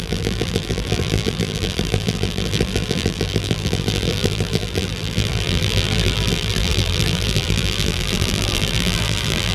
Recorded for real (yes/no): no